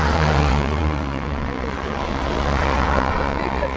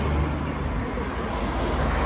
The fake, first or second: first